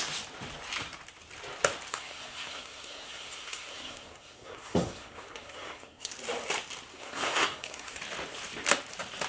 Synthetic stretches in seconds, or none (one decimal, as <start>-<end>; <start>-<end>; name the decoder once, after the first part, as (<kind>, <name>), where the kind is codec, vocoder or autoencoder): 1.9-6.1 (codec, SNAC); 6.9-8.0